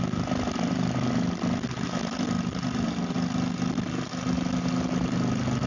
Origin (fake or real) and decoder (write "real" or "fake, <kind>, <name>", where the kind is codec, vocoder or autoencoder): real